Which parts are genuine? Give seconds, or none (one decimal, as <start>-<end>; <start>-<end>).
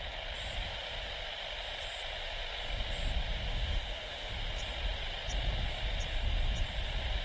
0.0-3.5; 4.3-7.2